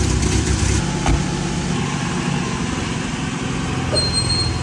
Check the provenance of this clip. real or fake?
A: real